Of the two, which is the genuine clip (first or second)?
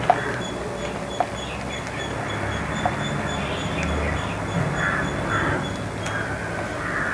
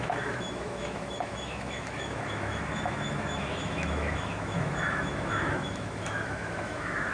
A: first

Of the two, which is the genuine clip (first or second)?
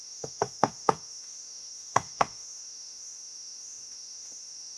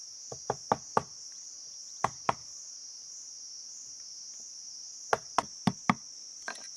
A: second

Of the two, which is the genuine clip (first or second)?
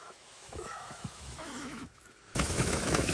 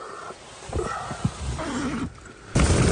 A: second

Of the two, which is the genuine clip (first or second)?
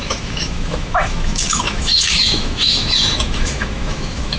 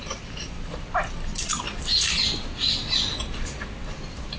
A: second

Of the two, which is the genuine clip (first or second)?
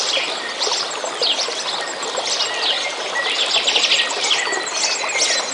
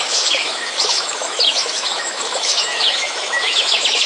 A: first